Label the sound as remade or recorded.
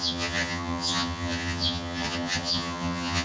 remade